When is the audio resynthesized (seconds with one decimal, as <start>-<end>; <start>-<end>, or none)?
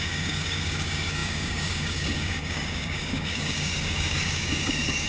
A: 0.0-5.1